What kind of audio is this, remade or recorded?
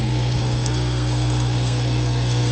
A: remade